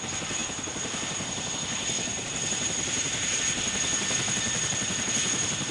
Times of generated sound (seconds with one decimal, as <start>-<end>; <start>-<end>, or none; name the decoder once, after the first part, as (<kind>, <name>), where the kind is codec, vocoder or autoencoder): 0.4-1.5 (vocoder, BigVGAN v2); 2.1-3.4